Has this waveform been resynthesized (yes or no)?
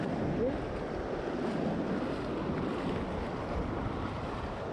no